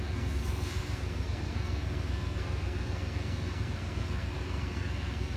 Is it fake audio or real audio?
fake